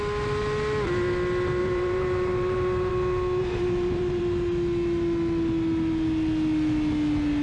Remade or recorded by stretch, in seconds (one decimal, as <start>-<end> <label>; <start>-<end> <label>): 0.0-1.6 recorded; 1.6-2.9 remade; 2.9-3.4 recorded; 3.4-4.2 remade; 4.2-7.4 recorded